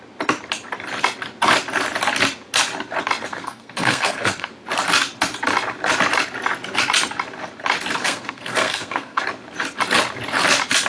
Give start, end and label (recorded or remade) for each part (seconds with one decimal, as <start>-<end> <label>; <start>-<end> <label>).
0.0-3.3 recorded; 3.3-4.5 remade; 4.5-8.0 recorded; 8.0-9.2 remade; 9.2-10.9 recorded